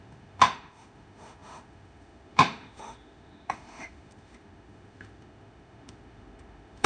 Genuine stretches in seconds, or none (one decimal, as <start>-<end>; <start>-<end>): none